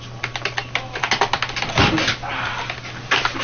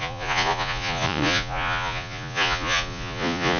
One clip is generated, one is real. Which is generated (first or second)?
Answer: second